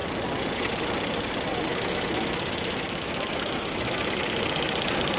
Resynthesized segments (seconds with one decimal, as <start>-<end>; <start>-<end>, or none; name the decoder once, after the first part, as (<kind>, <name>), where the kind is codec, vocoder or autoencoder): 1.7-4.1 (autoencoder, DAC-VAE)